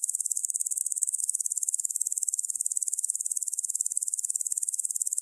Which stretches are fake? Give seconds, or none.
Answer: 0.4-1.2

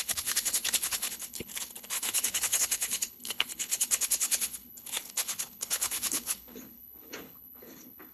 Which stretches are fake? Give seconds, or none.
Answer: 0.0-8.1

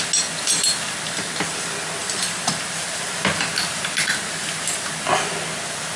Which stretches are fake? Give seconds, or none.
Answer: 2.0-2.6

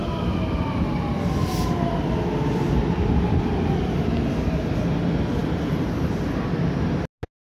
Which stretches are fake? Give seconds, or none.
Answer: none

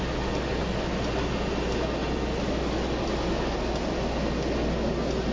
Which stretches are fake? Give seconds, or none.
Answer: none